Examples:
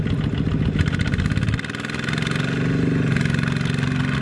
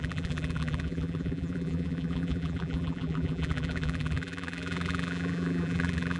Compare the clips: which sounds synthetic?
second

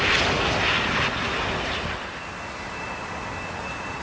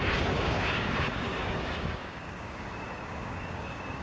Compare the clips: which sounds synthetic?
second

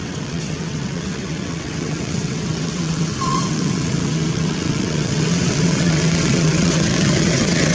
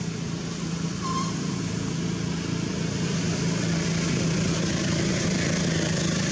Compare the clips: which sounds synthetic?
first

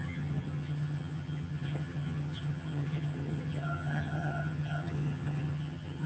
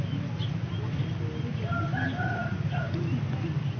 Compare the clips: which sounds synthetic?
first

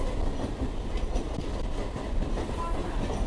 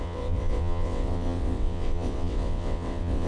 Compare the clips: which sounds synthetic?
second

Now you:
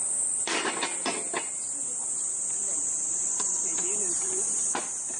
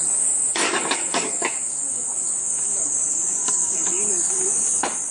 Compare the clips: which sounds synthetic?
second